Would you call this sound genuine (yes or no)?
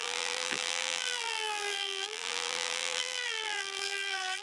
no